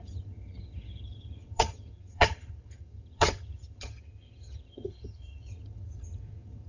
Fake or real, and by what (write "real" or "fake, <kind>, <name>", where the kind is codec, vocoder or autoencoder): fake, vocoder, HiFi-GAN